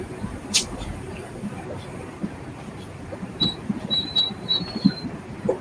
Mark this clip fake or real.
fake